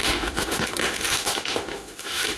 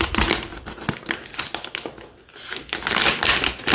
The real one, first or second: second